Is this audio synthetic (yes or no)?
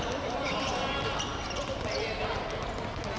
no